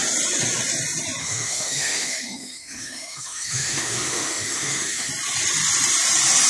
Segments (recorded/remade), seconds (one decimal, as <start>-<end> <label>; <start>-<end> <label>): 0.0-1.2 recorded; 1.2-5.1 remade; 5.1-6.5 recorded